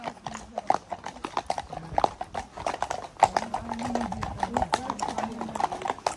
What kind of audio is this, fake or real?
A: real